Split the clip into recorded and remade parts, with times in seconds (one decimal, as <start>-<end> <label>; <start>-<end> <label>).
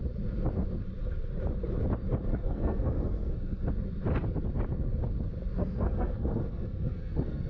0.0-2.3 recorded; 2.3-3.7 remade; 3.7-5.6 recorded; 5.6-7.5 remade